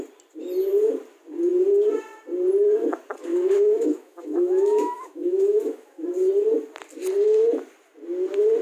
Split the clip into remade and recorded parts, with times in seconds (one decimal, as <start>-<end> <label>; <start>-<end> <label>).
0.0-3.3 recorded; 3.3-6.0 remade; 6.0-8.6 recorded